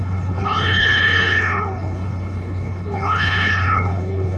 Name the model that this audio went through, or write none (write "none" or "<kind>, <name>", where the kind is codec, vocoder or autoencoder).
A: codec, HILCodec